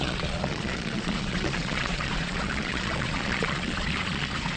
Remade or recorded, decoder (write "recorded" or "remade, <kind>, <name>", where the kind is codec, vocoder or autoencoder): remade, vocoder, Vocos